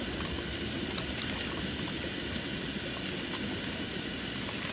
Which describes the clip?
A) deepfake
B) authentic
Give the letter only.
B